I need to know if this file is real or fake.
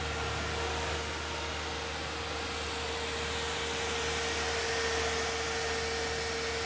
real